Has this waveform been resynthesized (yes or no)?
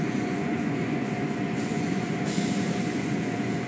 yes